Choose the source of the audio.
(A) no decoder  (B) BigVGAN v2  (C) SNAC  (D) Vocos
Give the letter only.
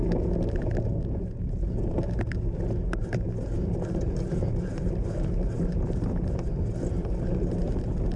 A